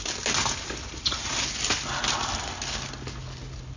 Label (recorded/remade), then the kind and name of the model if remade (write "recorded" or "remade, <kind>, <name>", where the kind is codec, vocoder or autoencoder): recorded